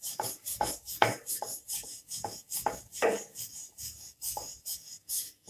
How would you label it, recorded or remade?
remade